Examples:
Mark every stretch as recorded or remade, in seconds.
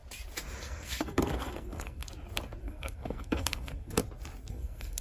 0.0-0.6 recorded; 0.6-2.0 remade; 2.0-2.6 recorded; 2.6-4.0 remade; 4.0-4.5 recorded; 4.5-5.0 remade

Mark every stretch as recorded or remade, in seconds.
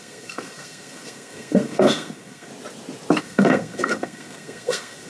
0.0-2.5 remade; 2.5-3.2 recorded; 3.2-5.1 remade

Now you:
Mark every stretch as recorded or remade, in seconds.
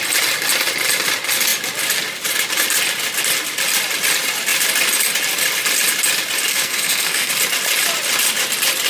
0.0-6.5 recorded; 6.5-7.3 remade; 7.3-8.9 recorded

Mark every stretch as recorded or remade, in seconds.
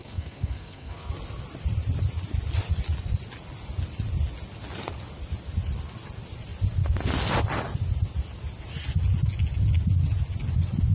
0.0-1.1 remade; 1.1-10.9 recorded